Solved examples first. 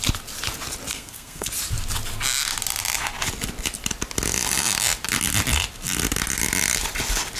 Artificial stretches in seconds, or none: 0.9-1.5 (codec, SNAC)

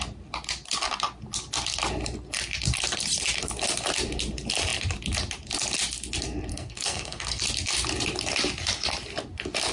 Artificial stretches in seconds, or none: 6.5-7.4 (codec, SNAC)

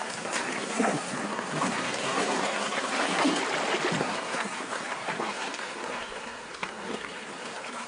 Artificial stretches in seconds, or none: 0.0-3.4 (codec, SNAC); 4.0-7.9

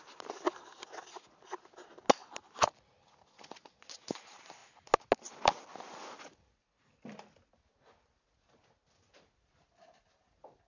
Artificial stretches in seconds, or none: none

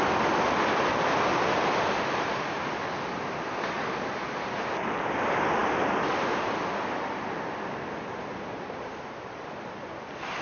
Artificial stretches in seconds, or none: none

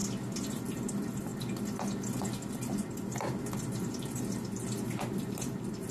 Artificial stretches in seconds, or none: 0.5-1.3 (vocoder, BigVGAN v2); 2.8-5.9